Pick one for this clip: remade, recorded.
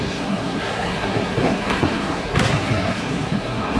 remade